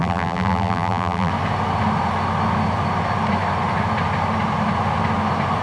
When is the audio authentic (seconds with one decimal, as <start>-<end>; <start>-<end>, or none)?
1.3-5.6